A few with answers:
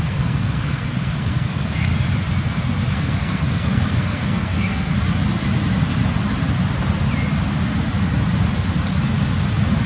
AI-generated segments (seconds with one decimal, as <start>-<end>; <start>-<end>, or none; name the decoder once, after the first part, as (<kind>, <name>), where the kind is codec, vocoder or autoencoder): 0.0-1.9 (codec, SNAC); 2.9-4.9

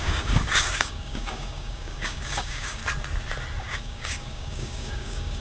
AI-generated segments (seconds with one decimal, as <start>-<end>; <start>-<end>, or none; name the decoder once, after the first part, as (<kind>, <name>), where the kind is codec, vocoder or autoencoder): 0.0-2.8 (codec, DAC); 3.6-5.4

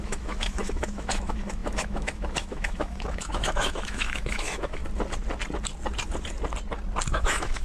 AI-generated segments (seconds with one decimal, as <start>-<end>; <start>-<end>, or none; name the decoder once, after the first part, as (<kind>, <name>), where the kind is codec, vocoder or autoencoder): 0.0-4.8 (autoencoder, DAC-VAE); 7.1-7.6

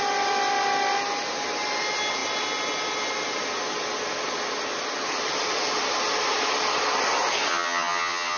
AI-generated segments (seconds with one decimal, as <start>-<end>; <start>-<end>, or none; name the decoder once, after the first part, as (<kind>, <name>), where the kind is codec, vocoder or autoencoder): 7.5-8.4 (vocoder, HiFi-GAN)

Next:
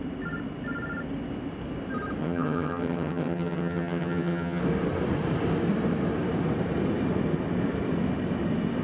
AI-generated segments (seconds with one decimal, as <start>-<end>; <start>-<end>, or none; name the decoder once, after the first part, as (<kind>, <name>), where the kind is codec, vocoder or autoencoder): 2.2-4.6 (vocoder, HiFi-GAN)

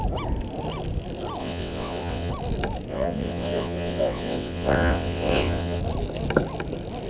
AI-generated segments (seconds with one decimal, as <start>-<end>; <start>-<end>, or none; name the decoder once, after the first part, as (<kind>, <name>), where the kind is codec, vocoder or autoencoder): 1.4-2.3 (vocoder, WaveNeXt); 2.9-5.8